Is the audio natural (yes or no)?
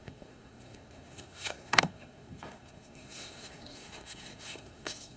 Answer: no